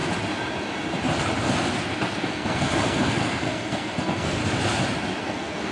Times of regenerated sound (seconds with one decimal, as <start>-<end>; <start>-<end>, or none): 2.2-4.4; 5.2-5.7